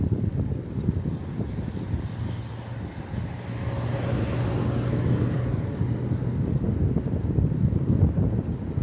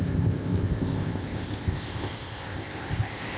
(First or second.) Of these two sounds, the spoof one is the second